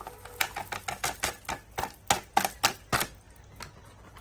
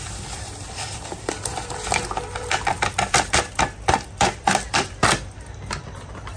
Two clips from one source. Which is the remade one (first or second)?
second